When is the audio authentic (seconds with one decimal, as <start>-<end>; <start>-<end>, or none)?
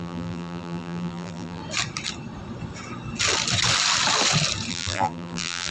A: 1.6-4.7